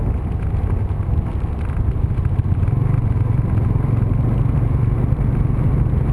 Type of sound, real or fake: real